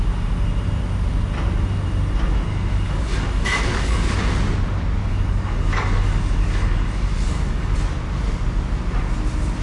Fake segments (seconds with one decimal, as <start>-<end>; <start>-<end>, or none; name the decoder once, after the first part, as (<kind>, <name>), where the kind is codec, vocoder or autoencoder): 2.5-4.2 (codec, DAC); 5.0-7.8